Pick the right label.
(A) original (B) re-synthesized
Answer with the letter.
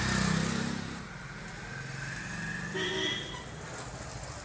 A